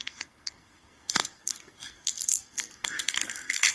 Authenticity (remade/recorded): remade